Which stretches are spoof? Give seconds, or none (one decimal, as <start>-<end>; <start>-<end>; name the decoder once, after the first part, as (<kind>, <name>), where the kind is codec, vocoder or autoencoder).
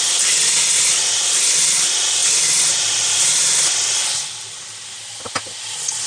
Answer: none